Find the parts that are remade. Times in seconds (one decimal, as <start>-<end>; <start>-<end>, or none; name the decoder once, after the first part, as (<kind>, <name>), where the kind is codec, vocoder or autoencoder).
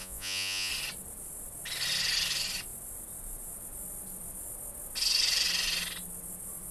0.0-0.7 (vocoder, Vocos)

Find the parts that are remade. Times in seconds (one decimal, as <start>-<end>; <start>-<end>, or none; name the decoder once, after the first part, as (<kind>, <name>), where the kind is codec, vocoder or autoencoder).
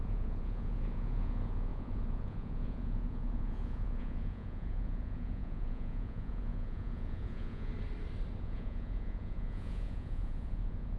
0.0-7.7 (vocoder, Vocos); 8.4-11.0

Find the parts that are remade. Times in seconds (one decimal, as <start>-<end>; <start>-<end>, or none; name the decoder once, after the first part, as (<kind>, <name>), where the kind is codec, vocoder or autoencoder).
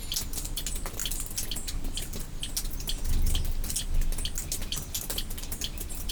none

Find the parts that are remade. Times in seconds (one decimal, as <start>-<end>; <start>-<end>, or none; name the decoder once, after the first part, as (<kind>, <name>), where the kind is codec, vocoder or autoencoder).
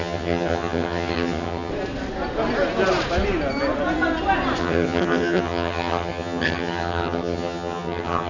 0.0-1.7 (vocoder, HiFi-GAN); 4.6-8.3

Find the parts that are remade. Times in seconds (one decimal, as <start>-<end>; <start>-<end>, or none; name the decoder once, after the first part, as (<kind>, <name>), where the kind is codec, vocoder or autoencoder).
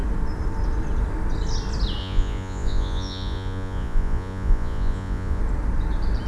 2.0-5.4 (vocoder, Vocos)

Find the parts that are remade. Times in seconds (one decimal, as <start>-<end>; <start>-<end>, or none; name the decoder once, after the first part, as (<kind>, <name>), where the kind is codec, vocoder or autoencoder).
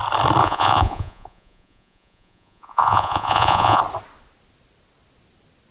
0.4-3.8 (vocoder, Vocos)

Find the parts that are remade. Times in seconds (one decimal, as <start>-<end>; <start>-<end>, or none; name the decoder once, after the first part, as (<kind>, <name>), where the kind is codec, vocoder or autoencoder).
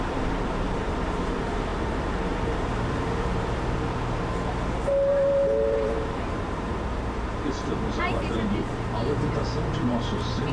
0.0-4.3 (vocoder, BigVGAN v2); 5.1-10.5